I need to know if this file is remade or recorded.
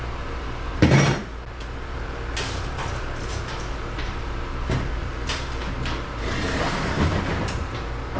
remade